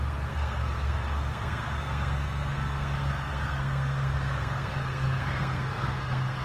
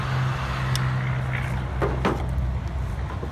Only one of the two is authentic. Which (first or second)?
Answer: second